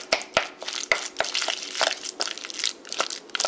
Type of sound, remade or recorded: recorded